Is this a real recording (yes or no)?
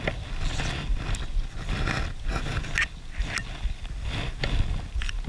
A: yes